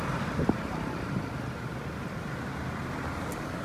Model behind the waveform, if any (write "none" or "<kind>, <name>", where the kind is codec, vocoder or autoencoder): none